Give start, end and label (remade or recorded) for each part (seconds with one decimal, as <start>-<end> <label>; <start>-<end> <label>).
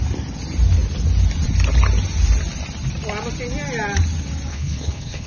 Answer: 0.0-4.5 recorded; 4.5-5.3 remade